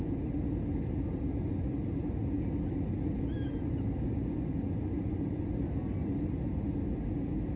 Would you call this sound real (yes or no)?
yes